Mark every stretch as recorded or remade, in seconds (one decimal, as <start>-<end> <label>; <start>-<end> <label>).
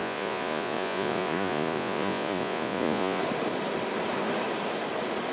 0.0-3.2 remade; 3.2-5.3 recorded